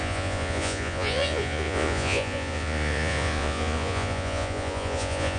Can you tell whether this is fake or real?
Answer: fake